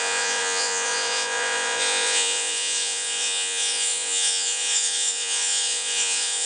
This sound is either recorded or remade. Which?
remade